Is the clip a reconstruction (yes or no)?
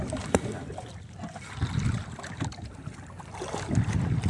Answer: no